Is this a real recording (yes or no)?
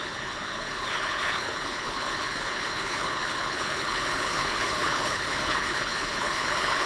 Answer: no